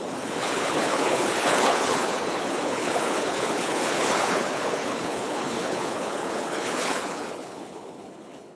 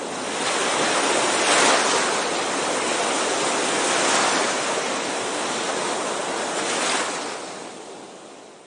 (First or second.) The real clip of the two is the second